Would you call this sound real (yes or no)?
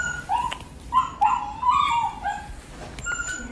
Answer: yes